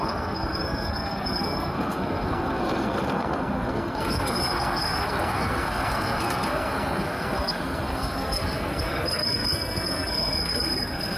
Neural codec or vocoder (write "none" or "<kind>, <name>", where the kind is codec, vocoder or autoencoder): codec, SNAC